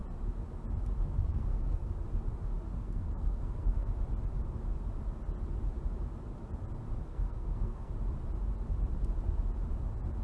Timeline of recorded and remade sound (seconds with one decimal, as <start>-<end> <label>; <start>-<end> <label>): 0.0-1.3 recorded; 1.3-1.9 remade; 1.9-2.8 recorded; 2.8-3.9 remade; 3.9-7.1 recorded; 7.1-7.9 remade; 7.9-10.2 recorded